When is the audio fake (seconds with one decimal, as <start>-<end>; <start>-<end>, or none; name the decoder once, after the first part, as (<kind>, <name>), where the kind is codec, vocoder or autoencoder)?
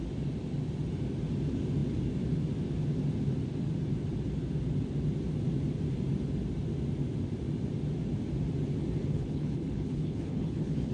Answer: 9.0-10.9 (codec, HILCodec)